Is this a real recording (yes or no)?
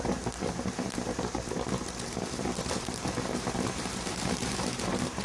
no